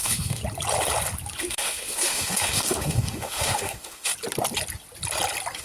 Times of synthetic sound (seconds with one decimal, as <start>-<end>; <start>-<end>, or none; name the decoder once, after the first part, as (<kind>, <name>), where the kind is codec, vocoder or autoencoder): 0.0-0.4 (autoencoder, DAC-VAE); 1.4-4.1